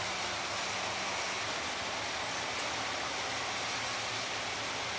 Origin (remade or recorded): recorded